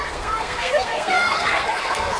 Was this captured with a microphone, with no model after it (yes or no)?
no